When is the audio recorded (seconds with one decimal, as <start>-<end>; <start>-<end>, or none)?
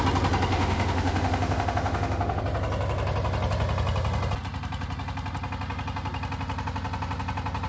0.0-0.5; 2.4-7.7